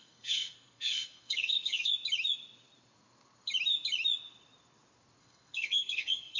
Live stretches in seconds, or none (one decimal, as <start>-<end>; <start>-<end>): 1.9-5.2